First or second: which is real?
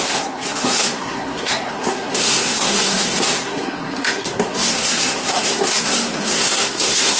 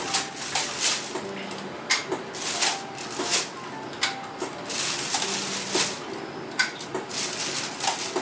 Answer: second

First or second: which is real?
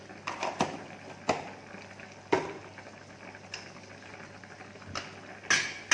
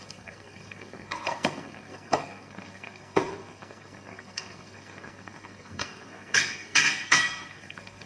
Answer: first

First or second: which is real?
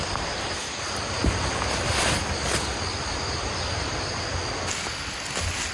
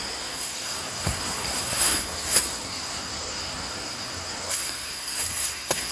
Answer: first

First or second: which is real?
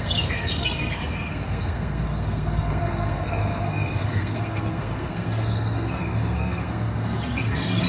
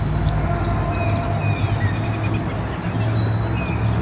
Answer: second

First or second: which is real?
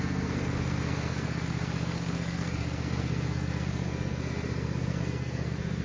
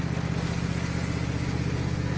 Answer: second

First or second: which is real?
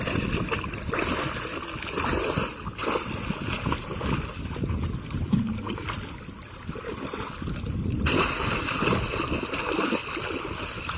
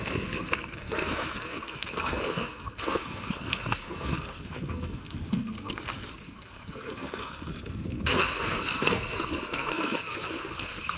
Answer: first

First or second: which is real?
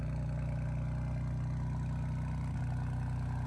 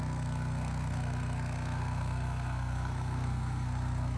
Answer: first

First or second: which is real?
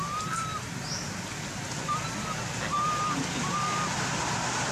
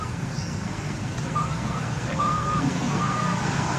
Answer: first